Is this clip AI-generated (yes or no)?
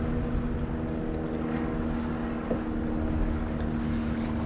no